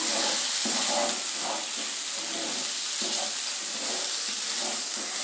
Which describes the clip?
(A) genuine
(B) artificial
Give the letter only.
A